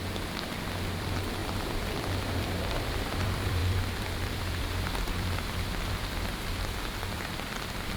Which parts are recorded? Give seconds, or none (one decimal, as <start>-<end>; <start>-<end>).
0.0-0.9